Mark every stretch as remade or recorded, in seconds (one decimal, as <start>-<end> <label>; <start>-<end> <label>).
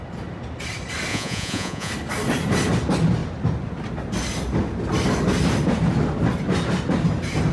0.0-1.1 recorded; 1.1-1.9 remade; 1.9-7.5 recorded